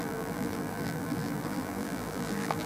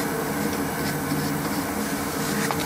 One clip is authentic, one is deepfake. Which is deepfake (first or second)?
first